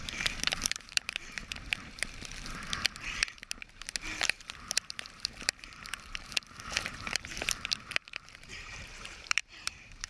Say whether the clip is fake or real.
fake